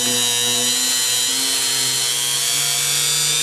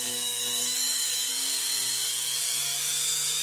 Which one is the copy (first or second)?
second